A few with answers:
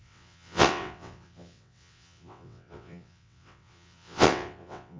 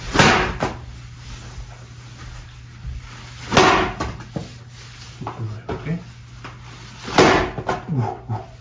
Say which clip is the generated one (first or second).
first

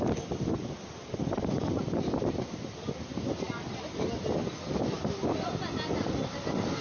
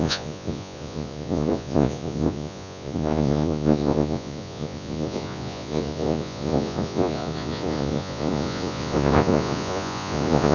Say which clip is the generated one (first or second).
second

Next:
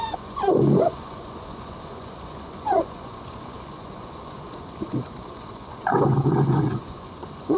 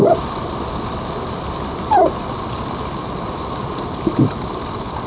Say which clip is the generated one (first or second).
first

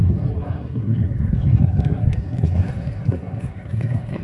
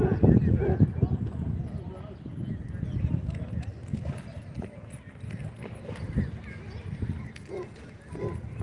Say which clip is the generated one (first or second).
first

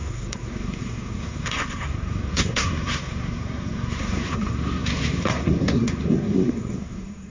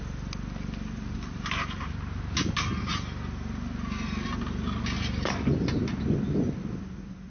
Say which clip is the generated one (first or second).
first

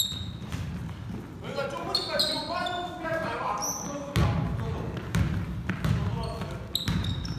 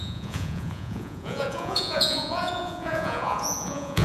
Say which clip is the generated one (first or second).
second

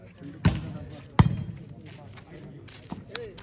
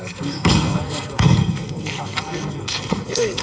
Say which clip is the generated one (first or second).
second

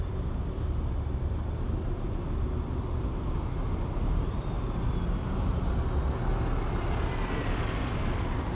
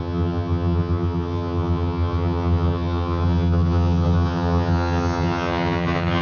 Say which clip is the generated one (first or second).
second